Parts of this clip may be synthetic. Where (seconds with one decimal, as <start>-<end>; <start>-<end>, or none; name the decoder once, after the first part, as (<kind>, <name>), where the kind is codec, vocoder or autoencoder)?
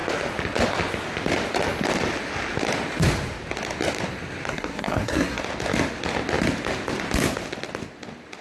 4.5-5.4 (codec, SNAC)